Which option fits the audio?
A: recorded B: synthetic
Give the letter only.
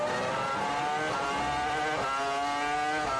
A